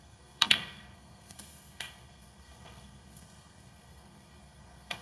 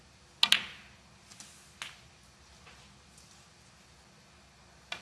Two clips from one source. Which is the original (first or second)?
second